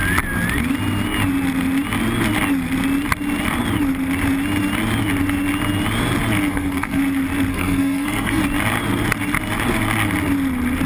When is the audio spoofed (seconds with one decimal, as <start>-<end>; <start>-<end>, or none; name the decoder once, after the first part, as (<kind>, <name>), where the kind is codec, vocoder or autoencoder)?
6.5-7.0 (codec, SNAC); 7.5-8.4